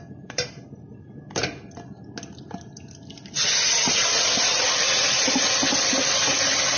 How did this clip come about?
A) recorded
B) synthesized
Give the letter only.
A